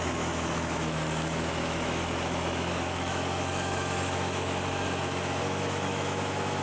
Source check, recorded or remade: remade